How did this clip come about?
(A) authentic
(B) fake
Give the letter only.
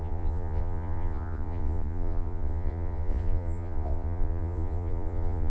B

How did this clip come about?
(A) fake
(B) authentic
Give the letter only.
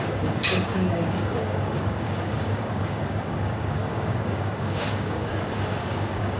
A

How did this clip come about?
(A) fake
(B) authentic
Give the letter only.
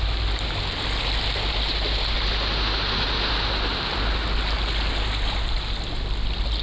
B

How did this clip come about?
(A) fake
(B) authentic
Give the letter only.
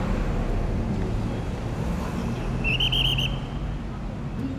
B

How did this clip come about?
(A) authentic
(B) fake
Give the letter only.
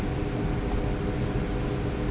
A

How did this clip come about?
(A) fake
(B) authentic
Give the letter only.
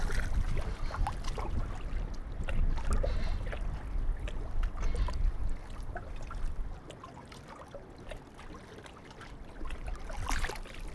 B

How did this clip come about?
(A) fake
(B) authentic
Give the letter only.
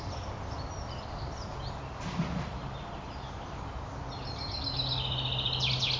B